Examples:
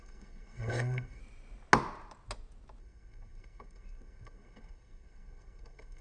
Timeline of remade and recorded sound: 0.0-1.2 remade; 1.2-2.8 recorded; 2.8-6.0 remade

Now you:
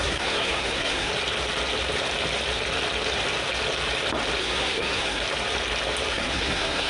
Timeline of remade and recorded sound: 0.0-1.1 remade; 1.1-4.4 recorded; 4.4-5.2 remade; 5.2-6.1 recorded; 6.1-6.9 remade

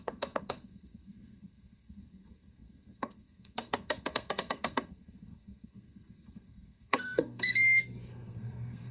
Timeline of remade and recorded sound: 0.0-8.9 remade

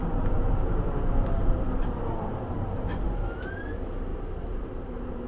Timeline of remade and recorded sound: 0.0-3.2 remade; 3.2-4.1 recorded; 4.1-5.3 remade

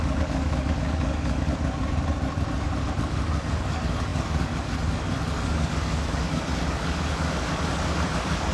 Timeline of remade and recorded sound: 0.0-1.5 remade; 1.5-3.0 recorded; 3.0-8.5 remade

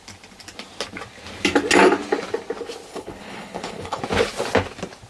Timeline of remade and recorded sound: 0.0-2.9 recorded; 2.9-4.0 remade; 4.0-5.1 recorded

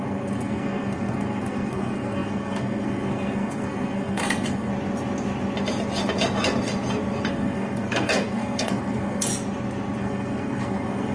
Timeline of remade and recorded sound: 0.0-4.7 remade; 4.7-7.3 recorded; 7.3-9.3 remade; 9.3-10.0 recorded; 10.0-11.1 remade